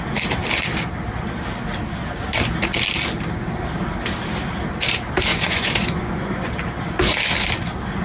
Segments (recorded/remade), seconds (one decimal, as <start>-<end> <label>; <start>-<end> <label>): 0.0-5.3 recorded; 5.3-6.5 remade; 6.5-8.0 recorded